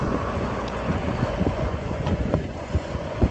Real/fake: fake